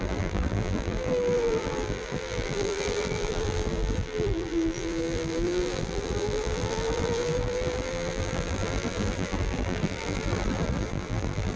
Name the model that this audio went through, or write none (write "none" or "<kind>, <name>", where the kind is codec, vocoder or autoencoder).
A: vocoder, BigVGAN v2